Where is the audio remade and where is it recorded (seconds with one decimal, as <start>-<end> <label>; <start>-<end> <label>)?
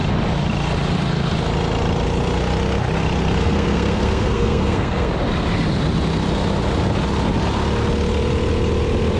0.0-3.4 recorded; 3.4-5.1 remade; 5.1-9.2 recorded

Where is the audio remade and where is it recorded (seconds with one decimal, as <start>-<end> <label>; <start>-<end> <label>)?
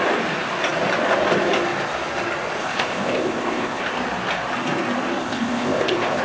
0.0-2.6 recorded; 2.6-3.8 remade; 3.8-5.2 recorded; 5.2-6.2 remade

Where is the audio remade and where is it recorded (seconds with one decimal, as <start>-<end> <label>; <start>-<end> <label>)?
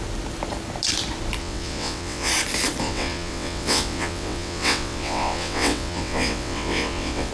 0.0-1.4 recorded; 1.4-2.3 remade; 2.3-2.8 recorded; 2.8-7.3 remade